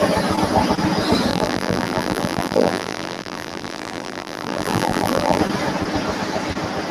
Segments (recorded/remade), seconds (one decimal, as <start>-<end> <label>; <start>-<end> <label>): 0.0-1.3 recorded; 1.3-5.4 remade; 5.4-6.9 recorded